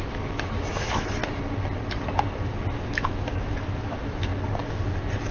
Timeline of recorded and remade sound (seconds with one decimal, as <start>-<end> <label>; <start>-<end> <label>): 0.0-1.2 remade; 1.2-2.7 recorded; 2.7-4.3 remade; 4.3-5.3 recorded